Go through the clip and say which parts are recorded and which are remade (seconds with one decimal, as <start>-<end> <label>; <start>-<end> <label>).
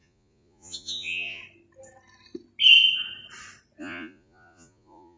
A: 0.0-1.4 remade; 1.4-3.8 recorded; 3.8-5.2 remade